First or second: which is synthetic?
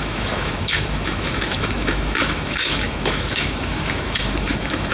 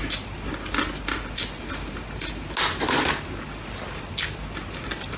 first